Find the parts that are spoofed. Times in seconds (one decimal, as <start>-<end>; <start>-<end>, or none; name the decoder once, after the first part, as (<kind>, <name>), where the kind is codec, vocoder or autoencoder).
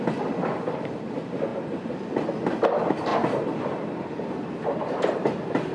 none